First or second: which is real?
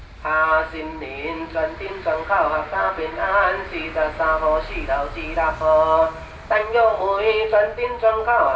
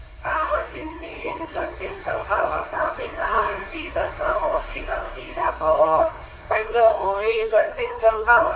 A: first